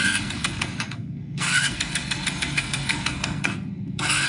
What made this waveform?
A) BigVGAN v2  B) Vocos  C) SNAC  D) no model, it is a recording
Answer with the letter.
C